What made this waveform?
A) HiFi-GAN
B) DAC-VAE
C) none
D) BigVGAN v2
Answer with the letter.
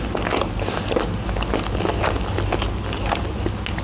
C